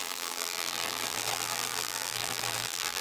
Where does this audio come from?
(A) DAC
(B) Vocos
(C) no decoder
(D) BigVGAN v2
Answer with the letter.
D